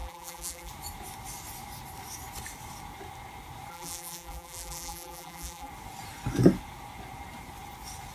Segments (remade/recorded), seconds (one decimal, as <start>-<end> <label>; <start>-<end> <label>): 0.0-0.7 remade; 0.7-3.7 recorded; 3.7-5.7 remade; 5.7-8.1 recorded